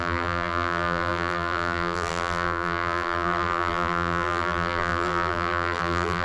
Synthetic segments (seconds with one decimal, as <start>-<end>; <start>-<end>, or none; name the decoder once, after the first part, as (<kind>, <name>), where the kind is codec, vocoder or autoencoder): 0.0-6.2 (vocoder, BigVGAN v2)